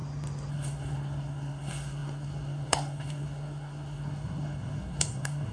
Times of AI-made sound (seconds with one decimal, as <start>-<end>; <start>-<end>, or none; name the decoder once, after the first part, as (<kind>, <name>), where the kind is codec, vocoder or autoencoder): 0.5-5.5 (codec, SNAC)